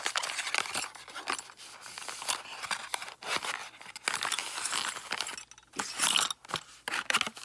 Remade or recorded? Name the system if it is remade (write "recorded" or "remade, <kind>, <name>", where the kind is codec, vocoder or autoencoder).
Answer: recorded